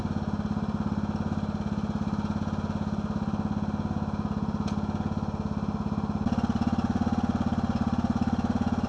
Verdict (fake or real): real